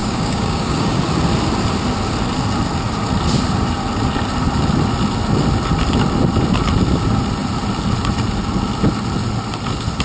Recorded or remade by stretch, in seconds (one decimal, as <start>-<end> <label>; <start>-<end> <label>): 0.0-1.0 remade; 1.0-10.0 recorded